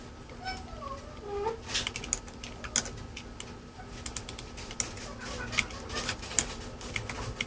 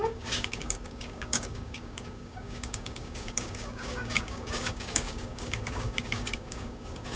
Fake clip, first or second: second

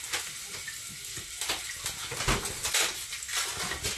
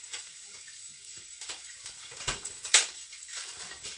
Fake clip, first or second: second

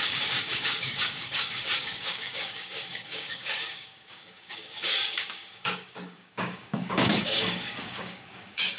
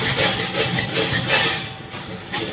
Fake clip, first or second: first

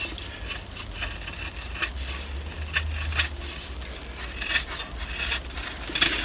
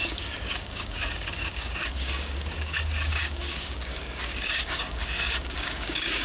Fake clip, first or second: second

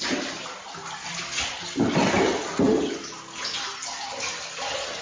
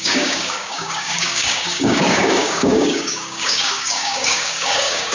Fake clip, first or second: second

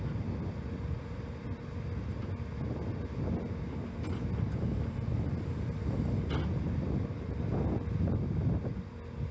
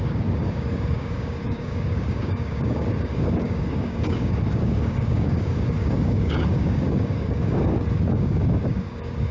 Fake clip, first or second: second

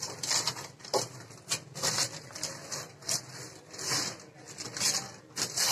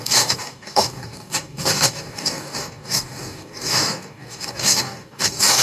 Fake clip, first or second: second